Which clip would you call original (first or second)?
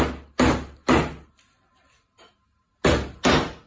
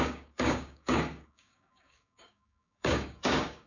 first